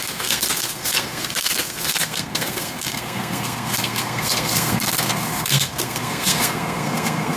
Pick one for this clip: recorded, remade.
remade